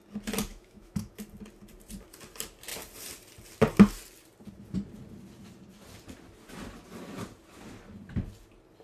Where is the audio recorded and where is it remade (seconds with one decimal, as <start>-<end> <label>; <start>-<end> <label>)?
0.0-0.5 recorded; 0.5-1.1 remade; 1.1-8.8 recorded